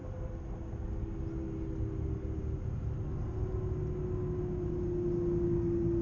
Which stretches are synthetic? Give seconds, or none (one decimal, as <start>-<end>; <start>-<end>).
none